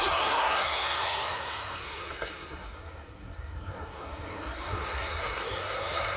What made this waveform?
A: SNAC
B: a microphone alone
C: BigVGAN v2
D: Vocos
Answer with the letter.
A